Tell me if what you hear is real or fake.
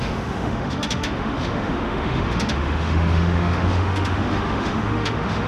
fake